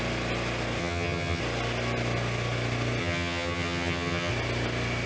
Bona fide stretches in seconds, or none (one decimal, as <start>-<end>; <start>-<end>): 0.0-0.8; 1.4-3.0; 4.3-5.1